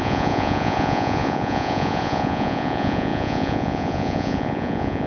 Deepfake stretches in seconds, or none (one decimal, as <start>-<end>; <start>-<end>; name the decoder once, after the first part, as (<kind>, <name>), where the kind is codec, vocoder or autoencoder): 0.0-5.1 (vocoder, Vocos)